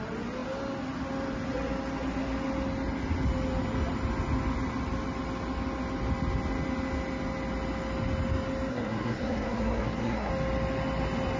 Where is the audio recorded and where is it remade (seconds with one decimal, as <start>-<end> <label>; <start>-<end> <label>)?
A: 0.0-8.7 recorded; 8.7-10.3 remade; 10.3-11.4 recorded